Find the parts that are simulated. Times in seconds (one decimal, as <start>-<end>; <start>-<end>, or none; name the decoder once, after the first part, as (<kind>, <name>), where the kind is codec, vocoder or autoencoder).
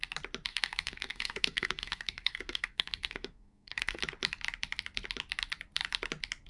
0.5-4.0 (codec, SNAC)